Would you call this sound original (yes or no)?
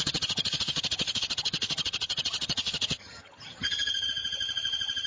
no